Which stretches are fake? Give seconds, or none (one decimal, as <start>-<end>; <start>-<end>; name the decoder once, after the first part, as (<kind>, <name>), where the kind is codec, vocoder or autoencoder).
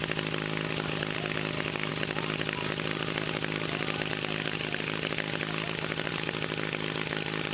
none